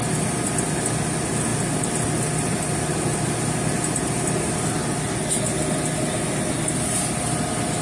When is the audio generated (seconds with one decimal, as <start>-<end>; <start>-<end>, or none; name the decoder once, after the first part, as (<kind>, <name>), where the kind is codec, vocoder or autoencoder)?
none